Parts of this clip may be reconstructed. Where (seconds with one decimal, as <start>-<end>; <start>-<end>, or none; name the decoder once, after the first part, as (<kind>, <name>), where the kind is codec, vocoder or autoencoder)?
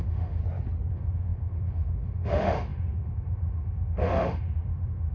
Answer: 0.0-0.4 (autoencoder, DAC-VAE); 0.9-5.1